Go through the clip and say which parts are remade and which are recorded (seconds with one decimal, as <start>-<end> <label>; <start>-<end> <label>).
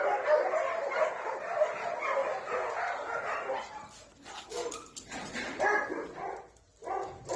0.0-4.6 recorded; 4.6-6.6 remade; 6.6-7.4 recorded